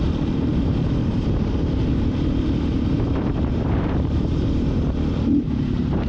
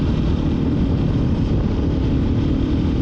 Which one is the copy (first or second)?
first